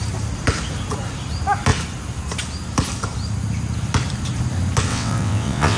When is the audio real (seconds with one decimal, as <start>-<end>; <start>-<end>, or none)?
0.0-4.9